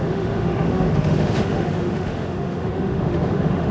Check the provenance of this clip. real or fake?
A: fake